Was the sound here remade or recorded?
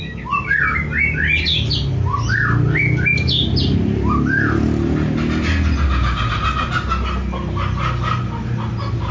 recorded